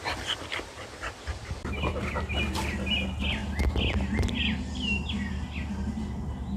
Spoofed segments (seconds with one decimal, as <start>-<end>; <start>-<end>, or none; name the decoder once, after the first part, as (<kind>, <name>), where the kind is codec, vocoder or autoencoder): none